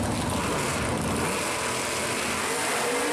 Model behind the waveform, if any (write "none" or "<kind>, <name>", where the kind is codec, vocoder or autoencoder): none